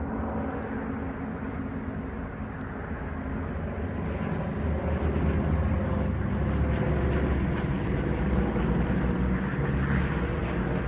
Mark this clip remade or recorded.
recorded